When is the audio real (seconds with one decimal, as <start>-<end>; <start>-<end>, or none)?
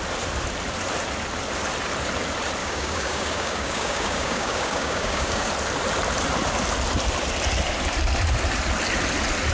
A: 0.0-2.6; 5.5-9.5